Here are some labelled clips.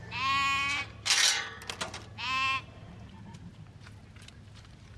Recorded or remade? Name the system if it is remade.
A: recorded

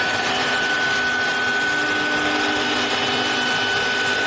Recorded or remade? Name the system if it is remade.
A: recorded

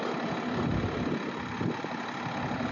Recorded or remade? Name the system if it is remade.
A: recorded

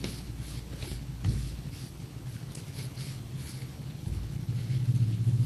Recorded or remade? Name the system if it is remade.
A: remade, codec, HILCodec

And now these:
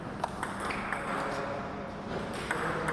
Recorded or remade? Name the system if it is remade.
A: recorded